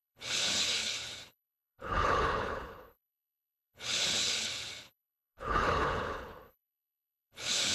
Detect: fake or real fake